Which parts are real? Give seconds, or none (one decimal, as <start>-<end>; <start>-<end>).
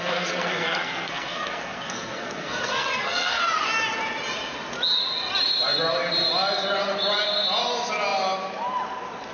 3.4-9.3